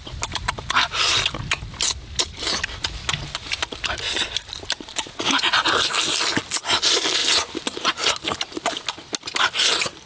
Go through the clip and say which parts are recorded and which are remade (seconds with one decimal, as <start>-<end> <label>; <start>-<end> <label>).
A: 0.0-10.1 recorded